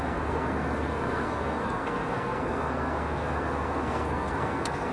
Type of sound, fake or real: fake